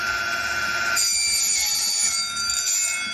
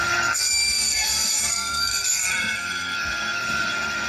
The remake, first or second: second